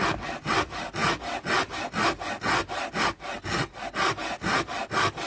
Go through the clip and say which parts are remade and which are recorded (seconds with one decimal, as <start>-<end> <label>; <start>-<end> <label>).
0.0-5.3 recorded